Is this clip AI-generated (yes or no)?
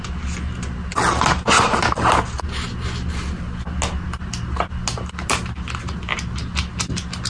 no